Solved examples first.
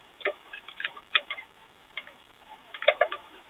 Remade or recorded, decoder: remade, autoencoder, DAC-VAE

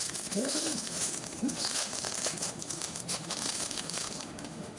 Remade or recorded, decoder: remade, autoencoder, DAC-VAE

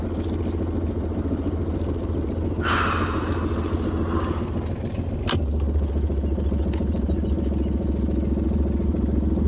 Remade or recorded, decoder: recorded